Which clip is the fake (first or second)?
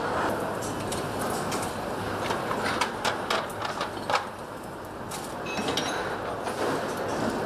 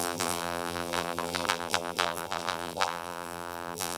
second